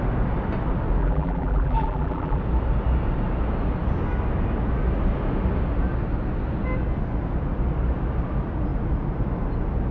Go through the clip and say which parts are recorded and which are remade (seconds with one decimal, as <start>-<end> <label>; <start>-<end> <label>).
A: 0.0-1.0 recorded; 1.0-2.4 remade; 2.4-9.9 recorded